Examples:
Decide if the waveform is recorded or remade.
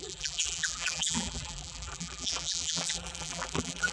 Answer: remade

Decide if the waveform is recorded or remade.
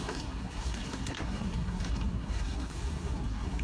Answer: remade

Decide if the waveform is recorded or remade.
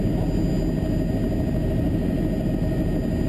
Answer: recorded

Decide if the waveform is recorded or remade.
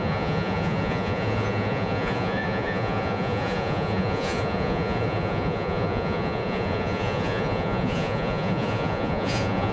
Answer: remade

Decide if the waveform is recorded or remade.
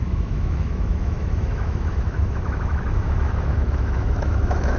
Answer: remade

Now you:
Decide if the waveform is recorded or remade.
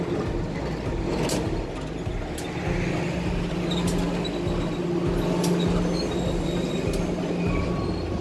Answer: recorded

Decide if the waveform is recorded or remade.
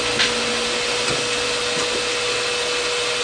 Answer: recorded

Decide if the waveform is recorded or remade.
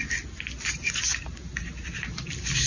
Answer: recorded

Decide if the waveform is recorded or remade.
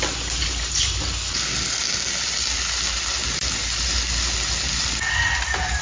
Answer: recorded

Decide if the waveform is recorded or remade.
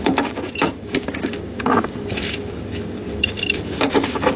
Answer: remade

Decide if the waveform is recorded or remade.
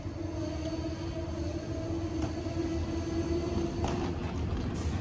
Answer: recorded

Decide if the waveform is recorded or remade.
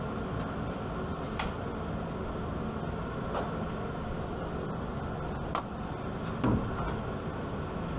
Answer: recorded